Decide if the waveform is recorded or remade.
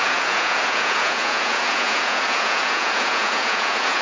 remade